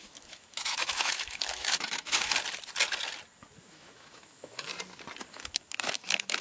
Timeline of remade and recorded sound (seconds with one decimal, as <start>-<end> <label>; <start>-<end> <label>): 0.0-2.3 remade; 2.3-3.6 recorded; 3.6-4.7 remade; 4.7-5.3 recorded; 5.3-6.4 remade